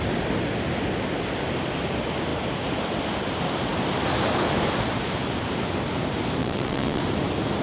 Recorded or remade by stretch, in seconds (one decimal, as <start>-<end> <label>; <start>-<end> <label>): 0.0-6.4 recorded; 6.4-7.0 remade; 7.0-7.6 recorded